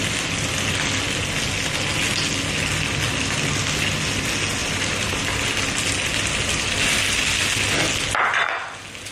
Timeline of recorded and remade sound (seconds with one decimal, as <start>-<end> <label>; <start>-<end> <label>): 0.0-4.6 recorded; 4.6-5.2 remade; 5.2-9.1 recorded